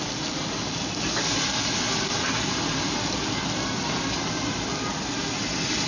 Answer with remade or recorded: recorded